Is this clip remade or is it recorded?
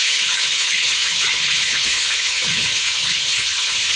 remade